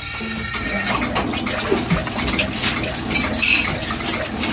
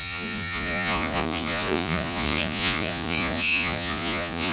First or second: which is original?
first